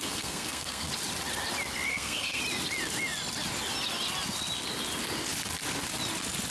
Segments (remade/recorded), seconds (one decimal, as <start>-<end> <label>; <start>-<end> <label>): 0.0-0.9 remade; 0.9-1.9 recorded; 1.9-2.4 remade; 2.4-6.5 recorded